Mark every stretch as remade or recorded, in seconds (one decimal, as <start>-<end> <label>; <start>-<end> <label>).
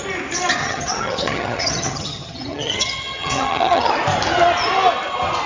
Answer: 0.0-0.6 recorded; 0.6-3.9 remade; 3.9-5.5 recorded